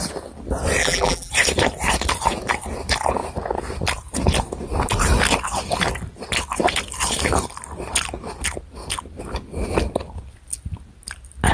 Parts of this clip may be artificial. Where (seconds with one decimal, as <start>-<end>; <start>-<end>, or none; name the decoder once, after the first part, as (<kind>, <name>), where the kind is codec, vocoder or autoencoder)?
0.8-1.3 (vocoder, BigVGAN v2)